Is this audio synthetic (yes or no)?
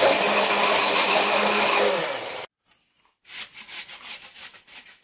no